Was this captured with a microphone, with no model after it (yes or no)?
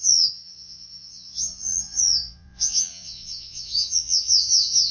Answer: no